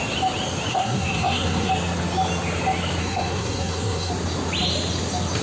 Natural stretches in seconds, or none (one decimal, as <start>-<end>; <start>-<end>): 0.0-0.7; 1.7-3.0; 4.1-5.4